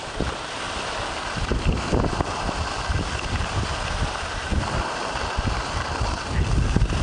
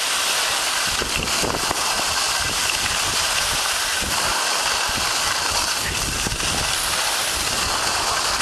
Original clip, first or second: first